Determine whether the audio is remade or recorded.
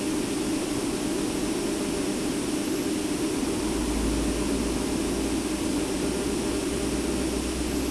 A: recorded